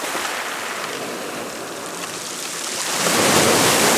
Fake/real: real